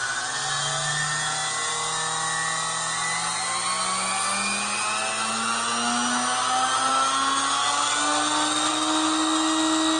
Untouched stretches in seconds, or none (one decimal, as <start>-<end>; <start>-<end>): 0.0-10.0